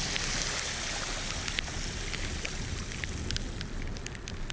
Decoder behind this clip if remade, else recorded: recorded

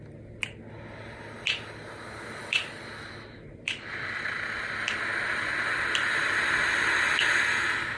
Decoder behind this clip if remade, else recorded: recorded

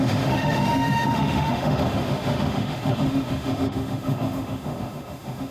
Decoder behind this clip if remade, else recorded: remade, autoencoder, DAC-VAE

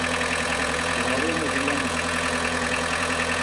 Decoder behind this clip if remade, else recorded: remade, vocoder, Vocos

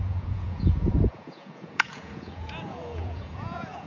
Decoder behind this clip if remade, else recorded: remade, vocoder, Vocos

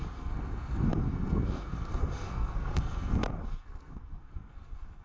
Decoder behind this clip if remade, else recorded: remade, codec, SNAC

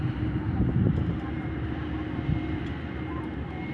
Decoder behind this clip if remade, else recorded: remade, vocoder, BigVGAN v2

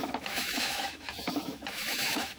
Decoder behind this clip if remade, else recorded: remade, autoencoder, DAC-VAE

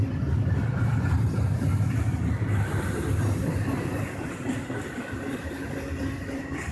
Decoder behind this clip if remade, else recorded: recorded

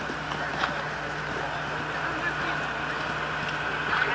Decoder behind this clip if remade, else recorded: recorded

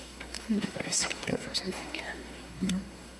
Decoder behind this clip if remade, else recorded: remade, codec, SNAC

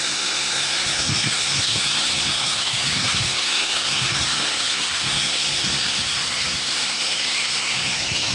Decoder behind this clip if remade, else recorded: remade, codec, SNAC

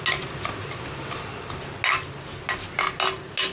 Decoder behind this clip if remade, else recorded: recorded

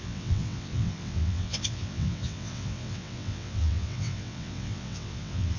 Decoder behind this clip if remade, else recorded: remade, vocoder, WaveNeXt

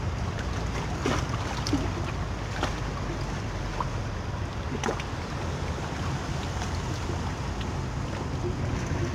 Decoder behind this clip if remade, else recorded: recorded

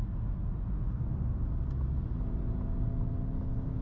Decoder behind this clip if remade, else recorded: recorded